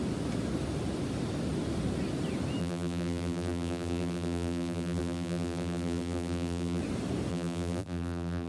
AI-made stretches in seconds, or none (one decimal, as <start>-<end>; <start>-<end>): 2.6-6.8; 7.3-8.5

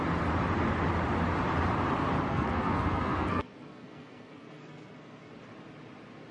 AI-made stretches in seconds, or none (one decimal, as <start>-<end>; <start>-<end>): 2.3-5.3

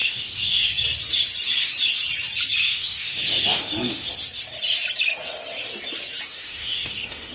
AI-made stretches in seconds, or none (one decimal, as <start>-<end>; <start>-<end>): 0.0-0.8; 2.6-4.1; 6.3-7.3

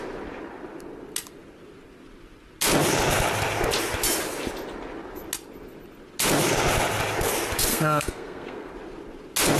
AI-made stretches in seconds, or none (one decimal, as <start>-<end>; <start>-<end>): 7.7-8.7

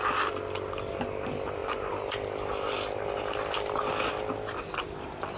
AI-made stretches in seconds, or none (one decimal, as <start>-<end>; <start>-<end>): none

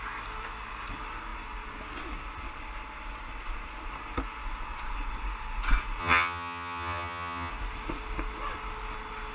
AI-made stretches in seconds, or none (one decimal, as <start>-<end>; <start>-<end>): 6.0-7.5